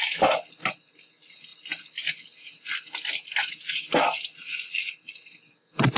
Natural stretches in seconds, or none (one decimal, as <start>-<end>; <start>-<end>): 0.0-6.0